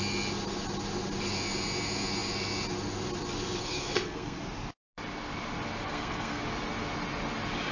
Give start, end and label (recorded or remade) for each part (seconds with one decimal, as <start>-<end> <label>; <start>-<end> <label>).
0.0-3.6 recorded; 3.6-4.4 remade; 4.4-5.8 recorded; 5.8-6.4 remade; 6.4-7.7 recorded